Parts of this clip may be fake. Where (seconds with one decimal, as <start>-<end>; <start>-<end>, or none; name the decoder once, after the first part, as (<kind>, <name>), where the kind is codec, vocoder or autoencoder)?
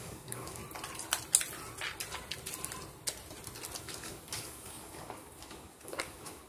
0.0-0.6 (codec, DAC); 3.8-6.5